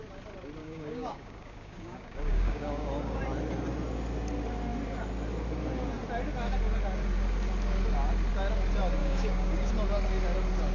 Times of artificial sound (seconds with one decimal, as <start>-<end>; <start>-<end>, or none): 0.6-3.2; 9.0-9.7